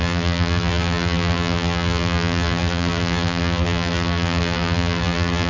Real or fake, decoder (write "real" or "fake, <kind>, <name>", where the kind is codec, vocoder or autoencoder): fake, vocoder, BigVGAN v2